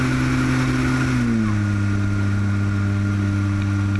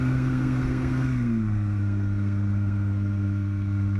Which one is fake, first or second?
second